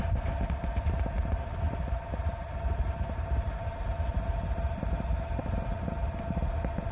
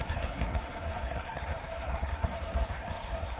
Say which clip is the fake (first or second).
second